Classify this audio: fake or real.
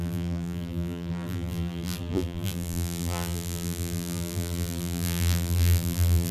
fake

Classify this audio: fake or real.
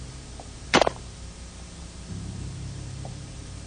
fake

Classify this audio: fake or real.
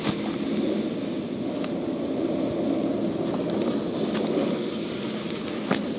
real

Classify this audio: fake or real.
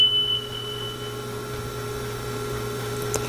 real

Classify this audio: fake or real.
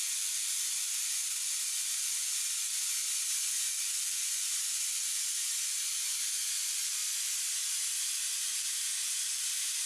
real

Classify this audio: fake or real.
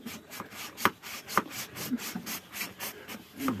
real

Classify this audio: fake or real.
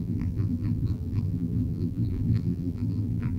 fake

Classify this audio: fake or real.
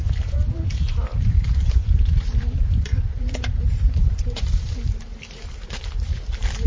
fake